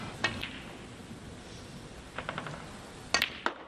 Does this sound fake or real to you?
real